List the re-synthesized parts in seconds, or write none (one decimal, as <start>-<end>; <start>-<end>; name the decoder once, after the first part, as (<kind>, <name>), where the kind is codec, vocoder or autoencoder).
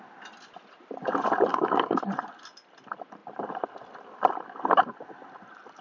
1.5-2.0 (codec, DAC)